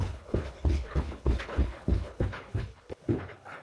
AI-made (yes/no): yes